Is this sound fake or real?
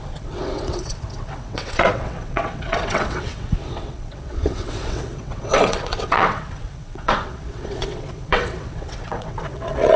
fake